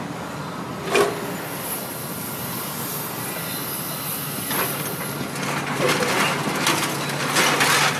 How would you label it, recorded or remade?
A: recorded